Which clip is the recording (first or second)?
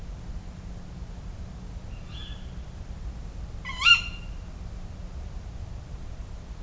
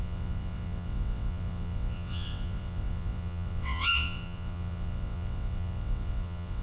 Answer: first